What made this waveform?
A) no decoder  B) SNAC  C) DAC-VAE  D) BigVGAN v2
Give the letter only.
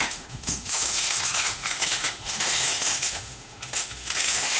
C